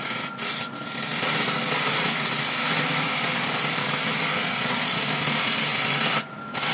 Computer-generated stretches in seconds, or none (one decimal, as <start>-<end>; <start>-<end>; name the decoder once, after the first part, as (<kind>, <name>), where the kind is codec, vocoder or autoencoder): 4.4-5.0 (vocoder, Vocos)